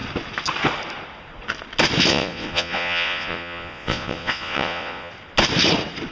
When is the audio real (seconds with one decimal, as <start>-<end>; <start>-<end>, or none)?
0.0-2.1; 5.1-6.1